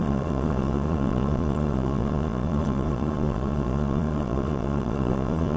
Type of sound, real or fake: fake